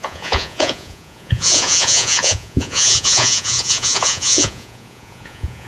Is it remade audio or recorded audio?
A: remade